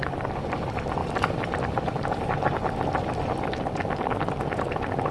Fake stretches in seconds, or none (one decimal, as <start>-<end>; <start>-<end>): none